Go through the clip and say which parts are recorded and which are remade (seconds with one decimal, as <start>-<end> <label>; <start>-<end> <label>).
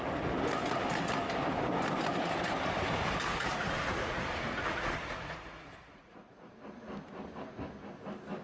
0.0-3.3 recorded; 3.3-6.5 remade; 6.5-8.4 recorded